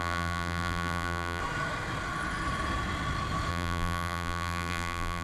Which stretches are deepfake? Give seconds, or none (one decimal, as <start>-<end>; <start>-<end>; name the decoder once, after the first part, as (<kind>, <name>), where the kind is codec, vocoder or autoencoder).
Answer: 0.0-1.4 (vocoder, BigVGAN v2); 3.5-5.2